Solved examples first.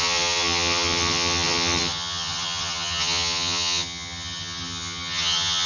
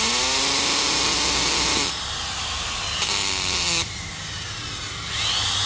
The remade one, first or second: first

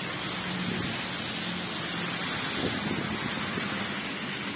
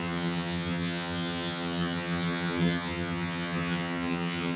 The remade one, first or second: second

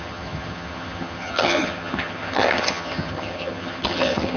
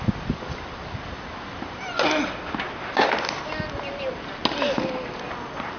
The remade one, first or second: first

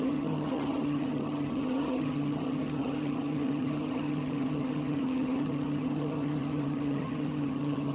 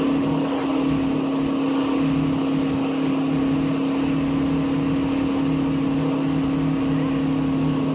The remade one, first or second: first